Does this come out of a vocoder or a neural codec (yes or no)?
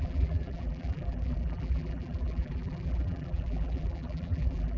yes